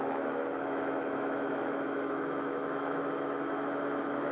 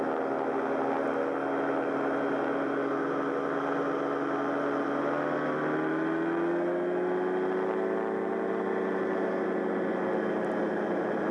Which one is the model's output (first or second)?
first